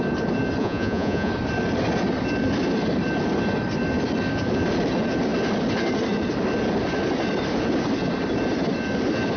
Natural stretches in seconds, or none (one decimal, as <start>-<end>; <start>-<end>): 0.0-0.6; 1.3-9.4